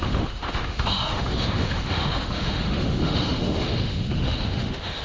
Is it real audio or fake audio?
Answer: fake